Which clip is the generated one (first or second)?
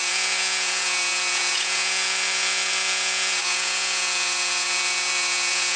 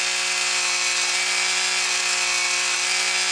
first